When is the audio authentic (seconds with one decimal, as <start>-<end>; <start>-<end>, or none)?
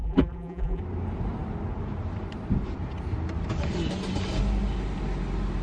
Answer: 0.8-5.6